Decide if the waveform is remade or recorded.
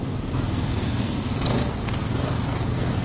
remade